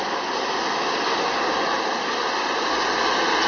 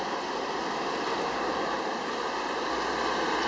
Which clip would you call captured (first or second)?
first